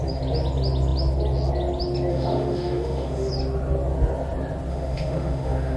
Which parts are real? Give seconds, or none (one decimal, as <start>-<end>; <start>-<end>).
0.0-2.1; 3.3-4.7